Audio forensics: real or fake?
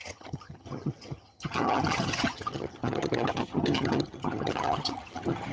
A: fake